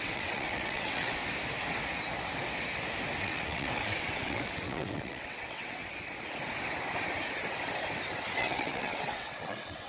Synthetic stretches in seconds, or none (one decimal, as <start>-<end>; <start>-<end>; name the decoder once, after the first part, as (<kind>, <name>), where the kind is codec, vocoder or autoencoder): 0.0-1.2 (vocoder, WaveNeXt); 3.2-5.8; 8.4-9.9